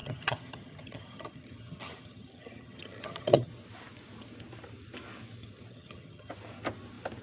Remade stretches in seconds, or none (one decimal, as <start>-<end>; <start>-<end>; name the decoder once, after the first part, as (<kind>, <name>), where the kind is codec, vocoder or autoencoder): 0.0-3.5 (vocoder, HiFi-GAN); 5.7-6.3